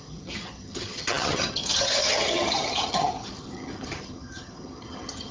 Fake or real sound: fake